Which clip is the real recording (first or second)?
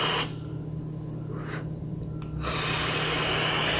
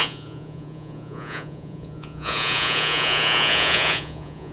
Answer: first